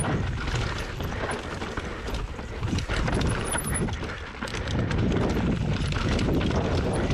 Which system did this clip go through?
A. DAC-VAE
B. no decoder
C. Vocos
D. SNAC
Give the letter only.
B